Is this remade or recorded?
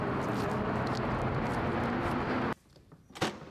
recorded